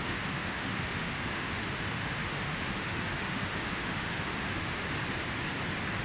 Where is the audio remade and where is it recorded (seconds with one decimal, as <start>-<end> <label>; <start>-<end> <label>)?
0.0-4.8 remade; 4.8-6.0 recorded

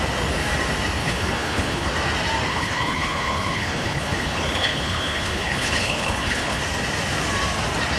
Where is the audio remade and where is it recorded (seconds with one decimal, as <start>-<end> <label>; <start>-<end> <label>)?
0.0-1.0 recorded; 1.0-1.9 remade; 1.9-2.5 recorded; 2.5-6.6 remade; 6.6-8.0 recorded

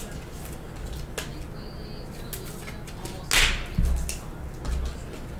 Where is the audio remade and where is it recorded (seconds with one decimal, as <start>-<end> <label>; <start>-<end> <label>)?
0.0-5.4 recorded

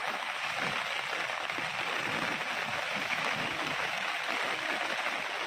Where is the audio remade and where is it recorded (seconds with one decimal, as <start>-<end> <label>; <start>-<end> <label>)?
0.0-0.5 remade; 0.5-2.7 recorded; 2.7-4.1 remade; 4.1-5.5 recorded

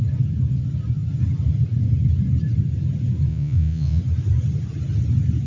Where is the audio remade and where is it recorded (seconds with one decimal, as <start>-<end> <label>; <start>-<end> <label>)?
0.0-3.3 recorded; 3.3-4.0 remade; 4.0-5.5 recorded

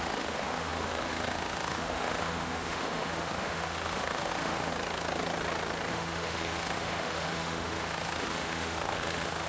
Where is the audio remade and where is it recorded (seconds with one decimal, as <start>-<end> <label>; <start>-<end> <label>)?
0.0-4.7 remade; 4.7-5.9 recorded; 5.9-9.5 remade